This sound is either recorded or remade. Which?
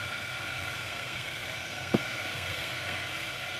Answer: remade